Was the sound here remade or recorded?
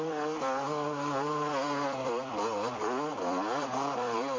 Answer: remade